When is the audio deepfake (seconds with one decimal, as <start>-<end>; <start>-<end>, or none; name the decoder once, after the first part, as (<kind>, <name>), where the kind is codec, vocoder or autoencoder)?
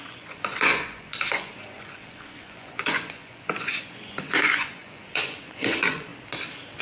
0.0-6.1 (vocoder, Vocos)